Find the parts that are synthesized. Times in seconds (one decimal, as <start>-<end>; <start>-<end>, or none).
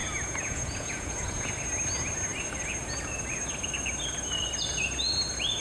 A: 0.0-1.5